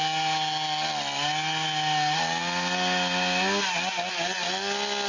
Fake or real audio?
real